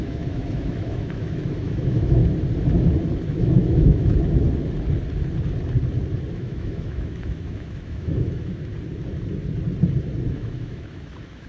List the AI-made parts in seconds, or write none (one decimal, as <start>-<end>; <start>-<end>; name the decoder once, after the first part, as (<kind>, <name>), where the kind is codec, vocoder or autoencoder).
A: 0.0-2.2 (autoencoder, DAC-VAE); 3.3-4.1; 6.3-8.7; 10.3-11.5